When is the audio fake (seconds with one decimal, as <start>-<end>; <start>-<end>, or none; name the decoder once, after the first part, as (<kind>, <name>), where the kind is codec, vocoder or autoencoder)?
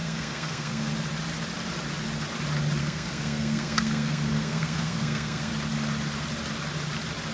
0.0-0.9 (codec, SNAC); 2.8-5.5